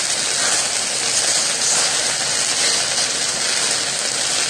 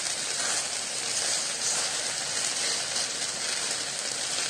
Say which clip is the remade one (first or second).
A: second